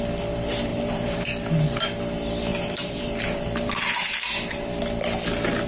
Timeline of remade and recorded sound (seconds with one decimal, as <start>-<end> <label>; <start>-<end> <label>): 0.0-0.7 recorded; 0.7-1.3 remade; 1.3-2.5 recorded; 2.5-4.7 remade; 4.7-5.7 recorded